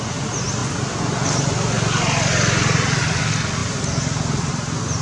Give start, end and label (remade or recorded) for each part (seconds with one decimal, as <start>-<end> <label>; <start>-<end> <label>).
0.0-5.0 recorded